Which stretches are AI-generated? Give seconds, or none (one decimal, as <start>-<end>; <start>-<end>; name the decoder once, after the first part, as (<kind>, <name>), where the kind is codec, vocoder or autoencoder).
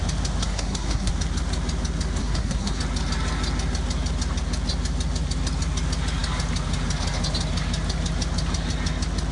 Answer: 0.4-1.1 (codec, SNAC); 2.2-2.8